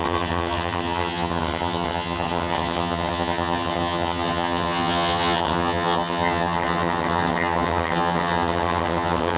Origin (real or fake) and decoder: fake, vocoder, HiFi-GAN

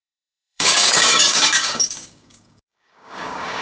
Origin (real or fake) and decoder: fake, codec, DAC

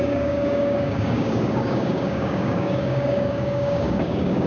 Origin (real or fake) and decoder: fake, codec, DAC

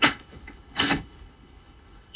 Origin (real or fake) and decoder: fake, codec, HILCodec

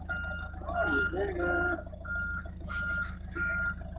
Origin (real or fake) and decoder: real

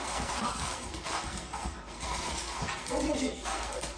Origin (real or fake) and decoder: fake, codec, SNAC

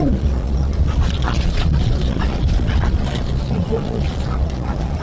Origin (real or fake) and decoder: fake, vocoder, Vocos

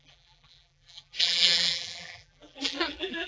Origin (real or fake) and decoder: fake, vocoder, BigVGAN v2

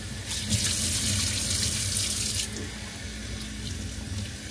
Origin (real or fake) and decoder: real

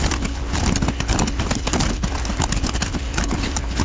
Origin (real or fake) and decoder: fake, vocoder, BigVGAN v2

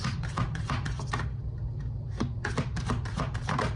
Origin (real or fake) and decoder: fake, vocoder, BigVGAN v2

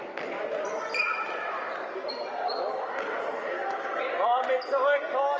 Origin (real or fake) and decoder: real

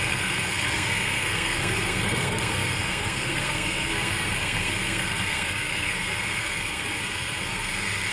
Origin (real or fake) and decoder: fake, codec, SNAC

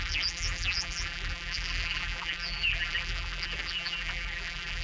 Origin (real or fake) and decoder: fake, vocoder, BigVGAN v2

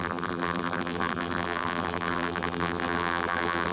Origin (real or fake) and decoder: fake, vocoder, BigVGAN v2